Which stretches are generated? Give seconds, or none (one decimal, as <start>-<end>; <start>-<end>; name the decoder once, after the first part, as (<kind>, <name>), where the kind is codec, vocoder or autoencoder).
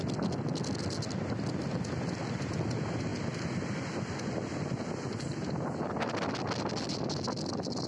none